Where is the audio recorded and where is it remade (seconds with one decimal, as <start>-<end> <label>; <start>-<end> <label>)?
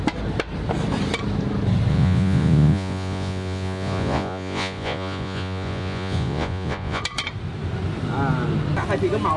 0.0-1.9 recorded; 1.9-7.0 remade; 7.0-9.4 recorded